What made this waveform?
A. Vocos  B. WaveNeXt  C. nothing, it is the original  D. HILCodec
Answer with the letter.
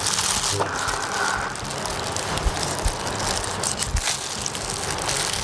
C